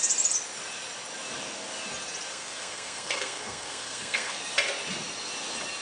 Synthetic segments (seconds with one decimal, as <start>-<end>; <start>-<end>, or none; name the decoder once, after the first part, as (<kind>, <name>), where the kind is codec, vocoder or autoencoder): 2.3-4.4 (codec, SNAC)